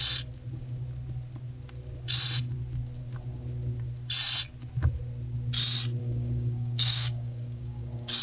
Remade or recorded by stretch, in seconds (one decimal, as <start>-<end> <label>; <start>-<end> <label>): 0.0-6.0 recorded; 6.0-8.2 remade